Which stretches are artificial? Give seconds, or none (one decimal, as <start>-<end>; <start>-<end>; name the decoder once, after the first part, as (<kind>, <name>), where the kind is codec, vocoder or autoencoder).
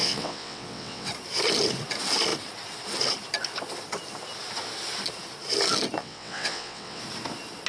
0.0-1.1 (vocoder, WaveNeXt); 6.0-7.0